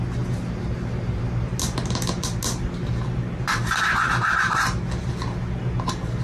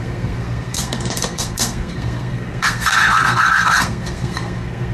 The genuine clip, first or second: first